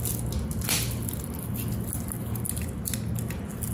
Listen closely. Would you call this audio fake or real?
real